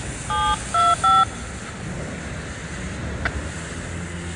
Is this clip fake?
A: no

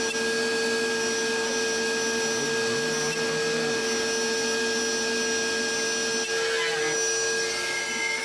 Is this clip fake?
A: no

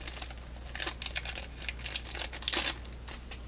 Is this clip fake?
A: no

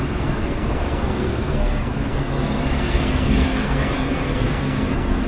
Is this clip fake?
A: yes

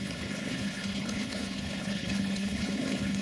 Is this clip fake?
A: yes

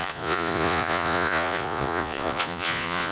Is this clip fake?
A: yes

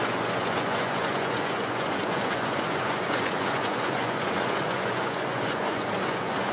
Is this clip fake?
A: yes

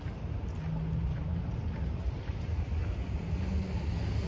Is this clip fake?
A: no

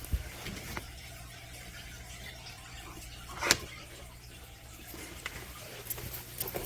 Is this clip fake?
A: yes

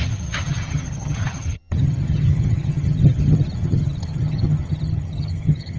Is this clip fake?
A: yes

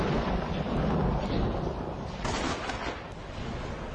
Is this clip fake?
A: no